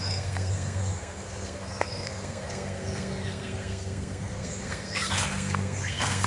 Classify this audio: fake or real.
fake